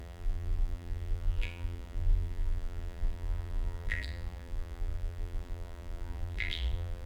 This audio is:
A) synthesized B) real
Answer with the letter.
A